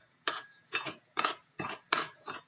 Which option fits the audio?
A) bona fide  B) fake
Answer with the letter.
B